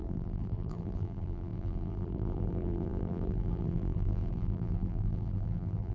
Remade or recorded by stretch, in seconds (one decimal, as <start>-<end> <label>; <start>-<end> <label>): 0.0-5.9 remade